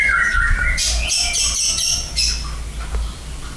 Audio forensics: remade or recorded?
recorded